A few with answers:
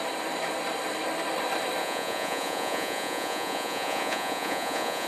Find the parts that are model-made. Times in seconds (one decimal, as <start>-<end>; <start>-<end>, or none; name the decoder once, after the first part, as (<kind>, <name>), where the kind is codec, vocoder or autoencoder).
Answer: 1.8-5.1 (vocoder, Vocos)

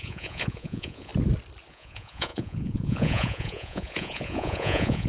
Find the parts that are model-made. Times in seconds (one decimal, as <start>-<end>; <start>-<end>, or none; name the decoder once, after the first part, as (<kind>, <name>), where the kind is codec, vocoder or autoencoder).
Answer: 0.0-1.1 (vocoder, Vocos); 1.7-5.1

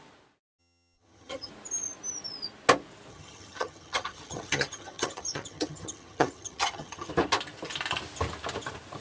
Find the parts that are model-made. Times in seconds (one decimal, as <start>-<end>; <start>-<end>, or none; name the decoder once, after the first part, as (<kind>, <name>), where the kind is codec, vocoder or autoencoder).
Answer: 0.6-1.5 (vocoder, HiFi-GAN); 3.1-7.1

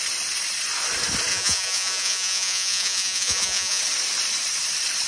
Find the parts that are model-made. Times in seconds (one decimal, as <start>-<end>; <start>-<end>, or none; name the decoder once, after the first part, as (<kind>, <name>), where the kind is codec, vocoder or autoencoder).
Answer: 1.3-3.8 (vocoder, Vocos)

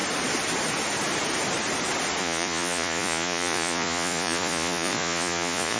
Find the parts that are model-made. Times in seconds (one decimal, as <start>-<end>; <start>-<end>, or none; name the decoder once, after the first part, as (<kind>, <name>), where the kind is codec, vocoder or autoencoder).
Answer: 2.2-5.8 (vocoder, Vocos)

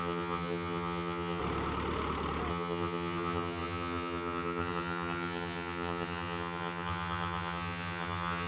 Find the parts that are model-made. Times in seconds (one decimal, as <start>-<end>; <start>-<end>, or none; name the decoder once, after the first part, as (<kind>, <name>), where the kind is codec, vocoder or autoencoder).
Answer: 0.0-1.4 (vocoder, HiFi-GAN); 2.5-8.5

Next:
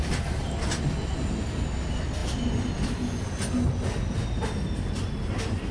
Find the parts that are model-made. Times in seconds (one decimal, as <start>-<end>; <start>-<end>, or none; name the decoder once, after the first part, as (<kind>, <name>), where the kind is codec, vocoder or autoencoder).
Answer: none